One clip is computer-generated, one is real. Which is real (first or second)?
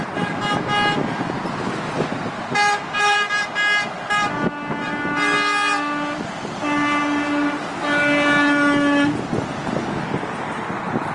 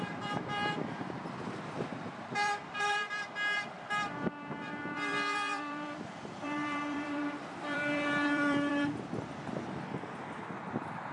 first